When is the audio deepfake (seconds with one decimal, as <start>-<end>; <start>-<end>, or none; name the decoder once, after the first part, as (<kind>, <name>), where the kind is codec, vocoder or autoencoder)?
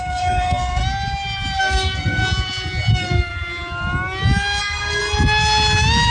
0.0-0.8 (codec, SNAC); 1.6-2.2; 2.9-3.3; 4.6-5.0